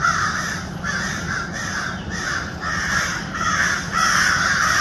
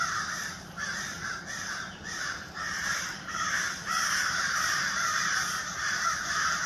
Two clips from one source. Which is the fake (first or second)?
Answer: second